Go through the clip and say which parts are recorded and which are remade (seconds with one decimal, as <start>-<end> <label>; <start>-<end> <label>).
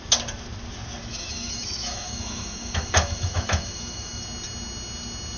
0.0-1.0 recorded; 1.0-4.2 remade; 4.2-5.4 recorded